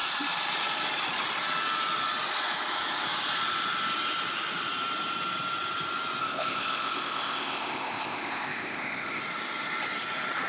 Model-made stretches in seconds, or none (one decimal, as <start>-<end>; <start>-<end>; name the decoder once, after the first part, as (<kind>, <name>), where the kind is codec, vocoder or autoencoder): 6.2-9.2 (codec, ZipCodec)